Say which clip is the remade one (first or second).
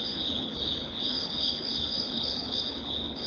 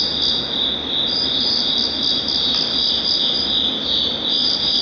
first